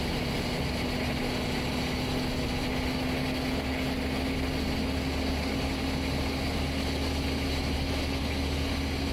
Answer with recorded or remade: recorded